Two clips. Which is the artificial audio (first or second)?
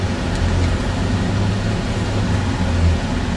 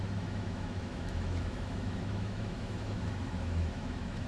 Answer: second